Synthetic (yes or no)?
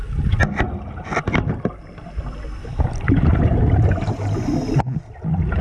no